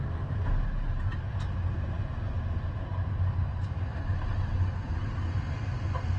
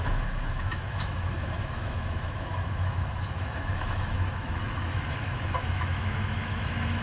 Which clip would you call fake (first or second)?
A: second